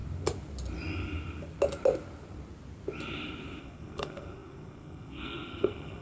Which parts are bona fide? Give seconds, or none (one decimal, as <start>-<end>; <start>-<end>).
0.0-3.6